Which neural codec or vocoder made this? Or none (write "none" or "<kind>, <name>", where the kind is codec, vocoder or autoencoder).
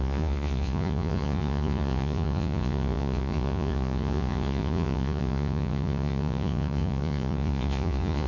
vocoder, Vocos